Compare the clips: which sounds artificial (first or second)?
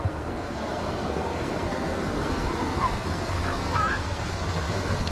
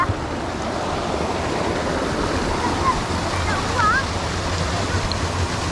first